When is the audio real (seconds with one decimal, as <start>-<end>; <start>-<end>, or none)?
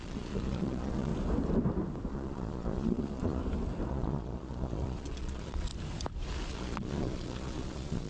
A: 1.1-2.1; 3.4-3.9; 5.7-6.5